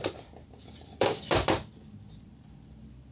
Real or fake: fake